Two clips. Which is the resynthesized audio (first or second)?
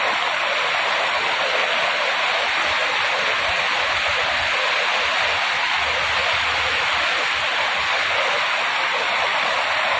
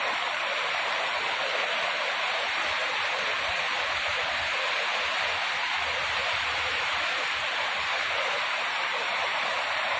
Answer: second